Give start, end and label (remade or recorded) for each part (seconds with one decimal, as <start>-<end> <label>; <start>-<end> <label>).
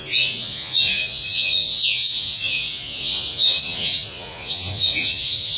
0.0-5.6 remade